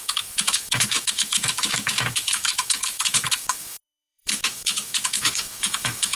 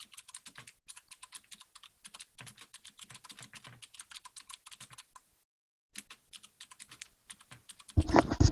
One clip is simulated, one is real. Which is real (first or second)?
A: second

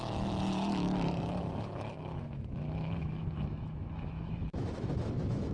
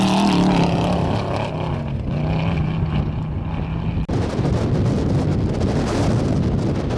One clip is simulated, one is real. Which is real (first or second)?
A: second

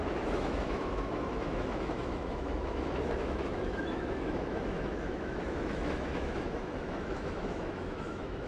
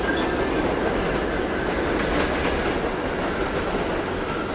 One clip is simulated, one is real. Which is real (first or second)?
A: second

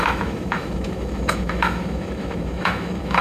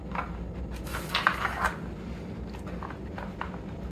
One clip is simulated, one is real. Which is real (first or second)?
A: second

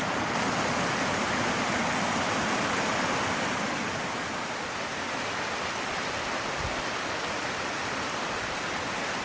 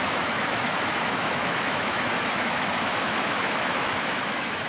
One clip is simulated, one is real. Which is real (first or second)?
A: first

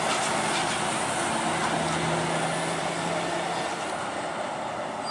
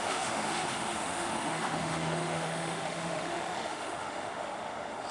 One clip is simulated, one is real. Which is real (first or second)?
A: first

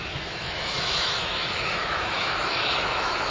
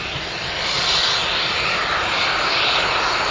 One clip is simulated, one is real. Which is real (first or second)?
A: second